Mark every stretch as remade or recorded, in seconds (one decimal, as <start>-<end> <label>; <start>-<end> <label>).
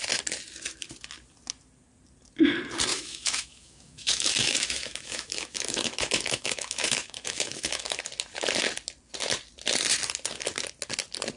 0.0-2.9 recorded; 2.9-8.0 remade; 8.0-11.4 recorded